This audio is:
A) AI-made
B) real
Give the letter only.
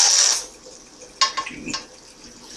B